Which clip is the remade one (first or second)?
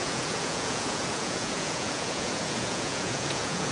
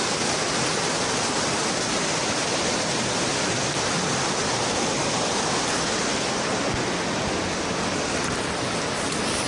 first